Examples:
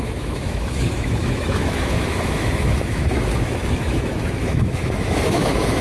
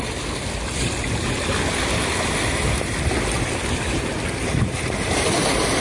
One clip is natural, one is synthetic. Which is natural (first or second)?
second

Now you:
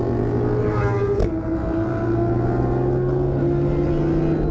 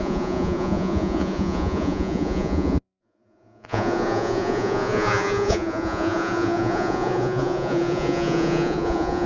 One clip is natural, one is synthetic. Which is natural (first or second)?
first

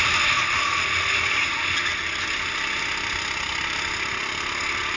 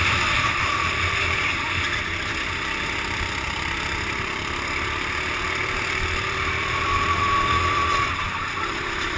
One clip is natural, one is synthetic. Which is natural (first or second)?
first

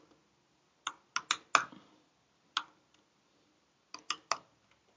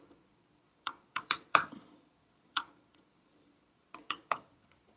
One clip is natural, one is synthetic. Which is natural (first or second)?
first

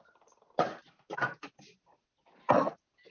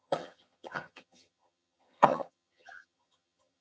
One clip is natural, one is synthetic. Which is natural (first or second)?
first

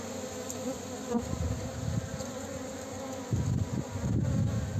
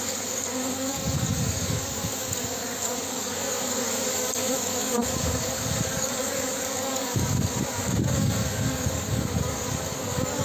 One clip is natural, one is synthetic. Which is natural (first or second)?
first